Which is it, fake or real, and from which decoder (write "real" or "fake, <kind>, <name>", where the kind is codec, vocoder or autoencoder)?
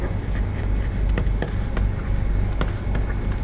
real